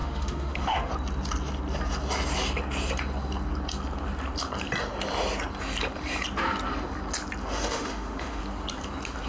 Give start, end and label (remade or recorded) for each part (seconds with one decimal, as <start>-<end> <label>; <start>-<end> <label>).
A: 0.0-0.9 remade; 0.9-7.4 recorded; 7.4-8.4 remade; 8.4-9.3 recorded